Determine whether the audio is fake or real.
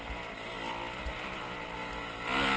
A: real